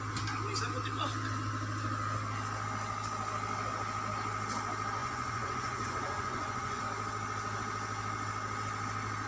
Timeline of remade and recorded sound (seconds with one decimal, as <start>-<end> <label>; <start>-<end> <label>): 0.0-5.0 recorded; 5.0-6.8 remade; 6.8-9.3 recorded